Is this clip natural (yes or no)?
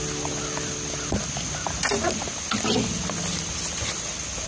yes